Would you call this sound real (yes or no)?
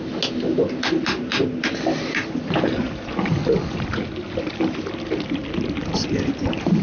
yes